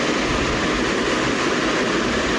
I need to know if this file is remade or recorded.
recorded